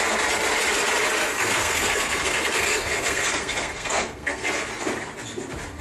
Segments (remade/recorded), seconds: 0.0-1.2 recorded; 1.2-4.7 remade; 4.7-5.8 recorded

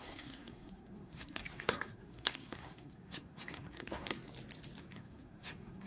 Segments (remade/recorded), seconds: 0.0-4.2 remade; 4.2-4.8 recorded; 4.8-5.9 remade

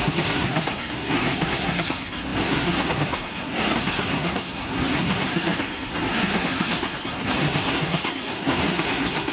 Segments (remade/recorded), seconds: 0.0-9.3 remade

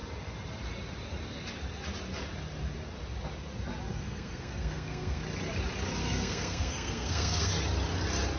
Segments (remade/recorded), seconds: 0.0-3.9 recorded; 3.9-5.2 remade; 5.2-6.0 recorded; 6.0-7.5 remade; 7.5-8.4 recorded

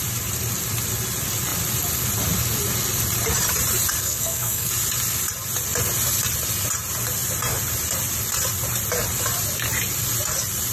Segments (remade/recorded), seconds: 0.0-4.0 recorded; 4.0-4.7 remade; 4.7-10.7 recorded

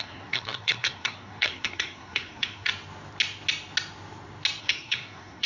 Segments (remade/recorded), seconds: 0.0-2.7 remade; 2.7-4.6 recorded; 4.6-5.5 remade

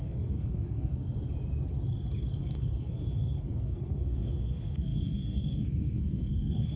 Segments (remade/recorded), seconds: 0.0-0.9 remade; 0.9-2.3 recorded; 2.3-6.8 remade